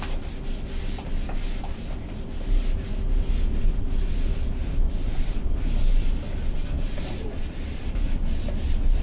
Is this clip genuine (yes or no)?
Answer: yes